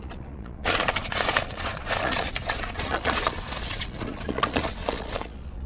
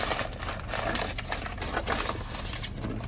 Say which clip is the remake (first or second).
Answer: first